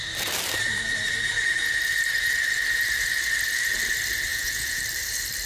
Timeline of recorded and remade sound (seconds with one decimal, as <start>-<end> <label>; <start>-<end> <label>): 0.0-4.3 recorded; 4.3-4.8 remade; 4.8-5.5 recorded